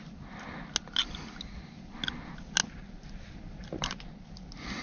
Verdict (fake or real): real